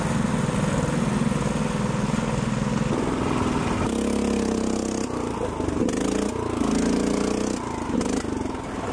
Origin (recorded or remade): recorded